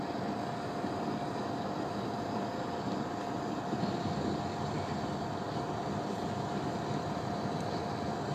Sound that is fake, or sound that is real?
real